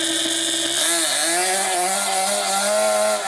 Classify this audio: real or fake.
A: real